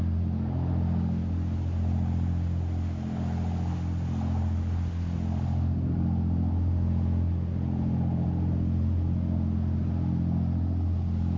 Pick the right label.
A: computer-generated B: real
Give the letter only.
B